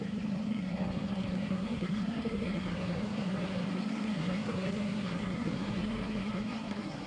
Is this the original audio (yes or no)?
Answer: no